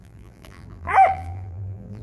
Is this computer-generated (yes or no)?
yes